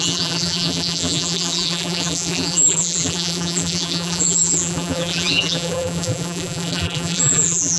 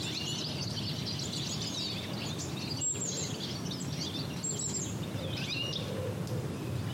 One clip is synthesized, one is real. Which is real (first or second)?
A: second